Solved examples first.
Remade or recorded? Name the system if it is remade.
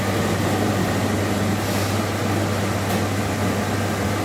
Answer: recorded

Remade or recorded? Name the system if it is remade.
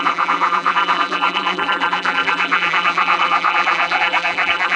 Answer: remade, vocoder, BigVGAN v2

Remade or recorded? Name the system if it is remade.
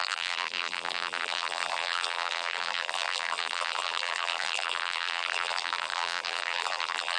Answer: remade, vocoder, BigVGAN v2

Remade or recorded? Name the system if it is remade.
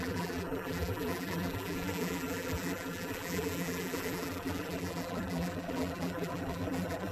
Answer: remade, vocoder, BigVGAN v2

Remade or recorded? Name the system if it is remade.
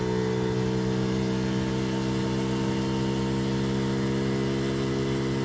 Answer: recorded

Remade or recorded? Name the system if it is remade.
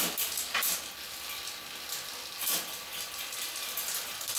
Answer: recorded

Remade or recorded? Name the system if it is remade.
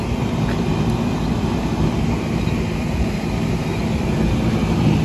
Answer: recorded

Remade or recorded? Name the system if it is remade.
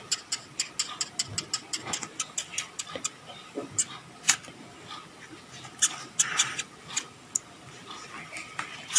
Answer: recorded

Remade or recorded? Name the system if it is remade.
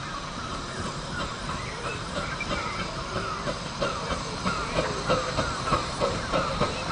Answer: remade, vocoder, BigVGAN v2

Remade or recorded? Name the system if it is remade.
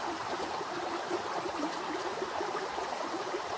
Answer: recorded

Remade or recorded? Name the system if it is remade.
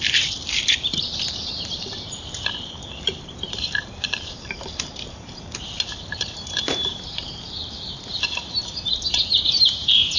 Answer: remade, vocoder, BigVGAN v2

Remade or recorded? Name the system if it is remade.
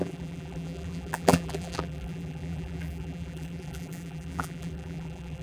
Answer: remade, vocoder, BigVGAN v2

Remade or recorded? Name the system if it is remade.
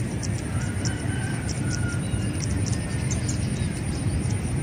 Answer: remade, vocoder, BigVGAN v2